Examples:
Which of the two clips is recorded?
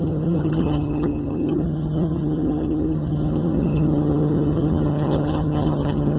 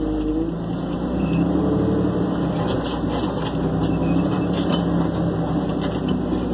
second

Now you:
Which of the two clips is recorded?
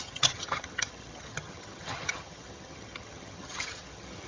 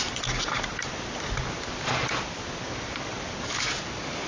second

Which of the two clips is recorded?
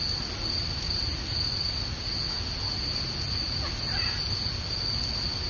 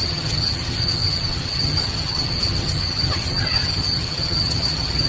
first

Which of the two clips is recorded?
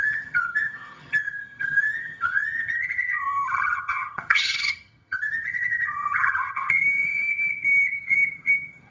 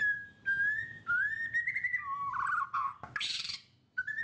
second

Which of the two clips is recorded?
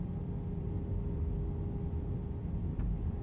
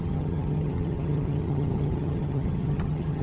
first